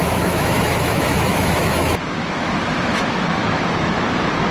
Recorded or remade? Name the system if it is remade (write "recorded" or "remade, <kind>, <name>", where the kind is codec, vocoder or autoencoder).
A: remade, autoencoder, DAC-VAE